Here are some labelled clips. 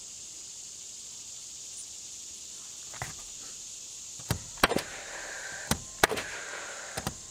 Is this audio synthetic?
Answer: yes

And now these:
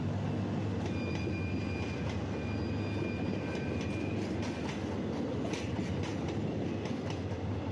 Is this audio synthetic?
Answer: no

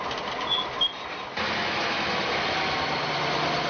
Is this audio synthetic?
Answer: no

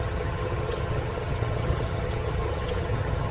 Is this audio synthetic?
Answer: yes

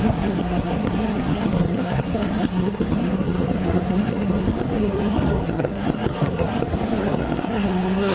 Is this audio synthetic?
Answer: yes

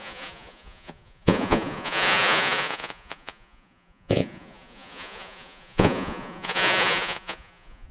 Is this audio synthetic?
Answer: yes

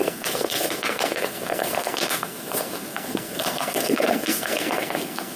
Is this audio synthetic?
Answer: yes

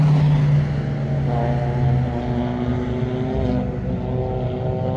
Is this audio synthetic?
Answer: no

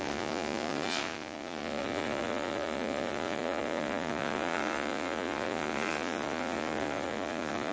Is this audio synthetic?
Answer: yes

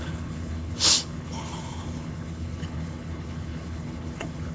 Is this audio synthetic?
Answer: yes